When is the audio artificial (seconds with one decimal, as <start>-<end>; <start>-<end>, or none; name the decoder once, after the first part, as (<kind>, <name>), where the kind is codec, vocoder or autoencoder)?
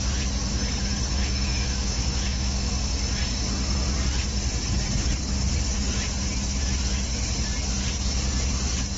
1.1-2.7 (autoencoder, DAC-VAE)